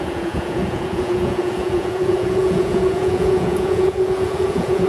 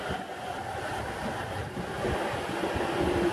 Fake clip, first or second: first